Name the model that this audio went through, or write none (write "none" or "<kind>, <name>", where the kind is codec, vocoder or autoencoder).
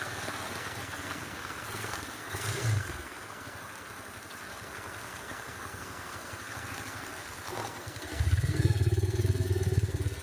codec, SNAC